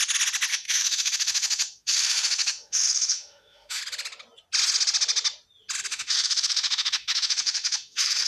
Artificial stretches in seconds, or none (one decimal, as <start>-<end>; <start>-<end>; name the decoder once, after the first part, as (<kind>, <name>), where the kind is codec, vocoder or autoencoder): 0.5-3.8 (autoencoder, DAC-VAE); 5.9-8.3